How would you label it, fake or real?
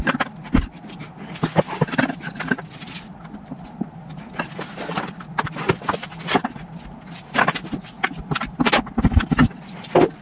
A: real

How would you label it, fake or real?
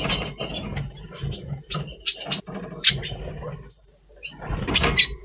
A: fake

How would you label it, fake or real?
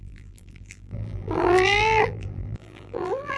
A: fake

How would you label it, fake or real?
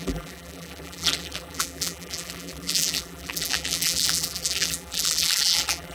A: fake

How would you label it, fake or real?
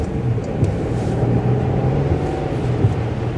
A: fake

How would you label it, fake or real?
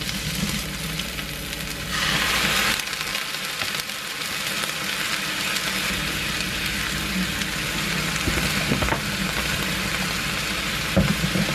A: fake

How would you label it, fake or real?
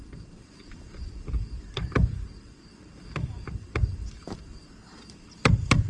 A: fake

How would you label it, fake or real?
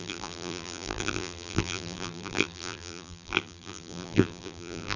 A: fake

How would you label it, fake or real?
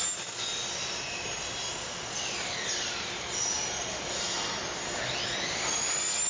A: real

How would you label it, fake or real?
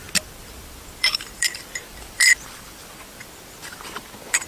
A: fake